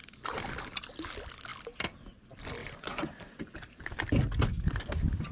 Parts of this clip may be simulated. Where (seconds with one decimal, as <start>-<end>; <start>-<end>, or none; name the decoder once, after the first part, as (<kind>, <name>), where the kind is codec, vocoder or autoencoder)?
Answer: 2.6-3.4 (vocoder, Vocos)